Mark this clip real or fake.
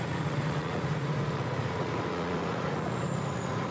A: fake